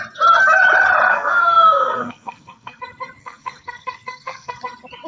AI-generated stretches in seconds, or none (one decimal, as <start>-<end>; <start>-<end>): 1.1-2.8; 3.2-4.6